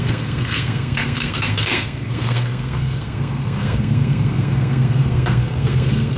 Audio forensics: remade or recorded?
remade